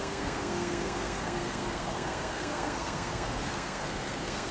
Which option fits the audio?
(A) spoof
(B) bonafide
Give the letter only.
A